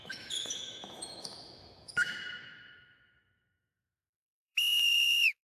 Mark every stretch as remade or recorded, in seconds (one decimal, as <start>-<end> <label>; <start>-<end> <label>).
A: 0.0-5.4 remade